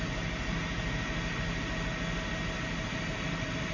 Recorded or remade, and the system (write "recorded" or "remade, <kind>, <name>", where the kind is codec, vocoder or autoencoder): recorded